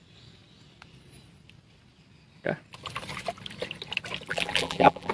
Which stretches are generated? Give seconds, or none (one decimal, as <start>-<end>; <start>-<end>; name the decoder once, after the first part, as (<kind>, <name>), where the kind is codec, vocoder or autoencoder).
4.3-5.1 (vocoder, BigVGAN v2)